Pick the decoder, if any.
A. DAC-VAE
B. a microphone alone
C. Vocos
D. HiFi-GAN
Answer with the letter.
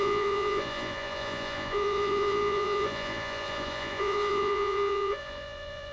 C